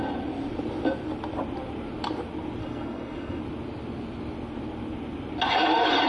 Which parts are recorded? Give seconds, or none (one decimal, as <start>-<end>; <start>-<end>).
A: 0.0-2.6; 3.4-6.1

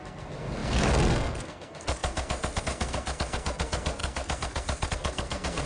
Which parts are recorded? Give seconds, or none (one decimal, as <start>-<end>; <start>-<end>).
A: none